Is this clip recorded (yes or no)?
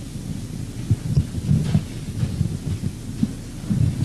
yes